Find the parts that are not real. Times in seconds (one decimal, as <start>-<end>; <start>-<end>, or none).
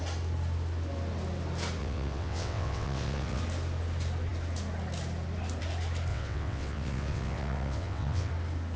1.8-3.4; 6.1-8.3